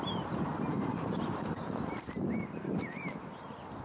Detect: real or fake fake